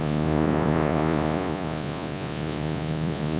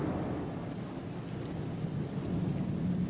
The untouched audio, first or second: second